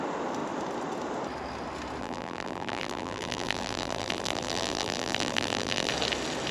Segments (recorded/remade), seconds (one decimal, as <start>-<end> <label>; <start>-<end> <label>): 0.0-2.0 recorded; 2.0-5.9 remade; 5.9-6.5 recorded